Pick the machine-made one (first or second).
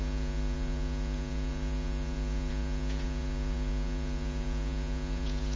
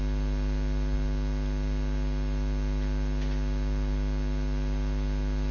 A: first